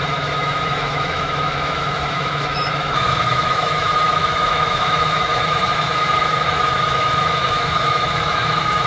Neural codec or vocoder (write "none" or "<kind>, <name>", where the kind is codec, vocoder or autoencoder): autoencoder, DAC-VAE